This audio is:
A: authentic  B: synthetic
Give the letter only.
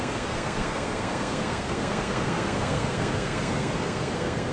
B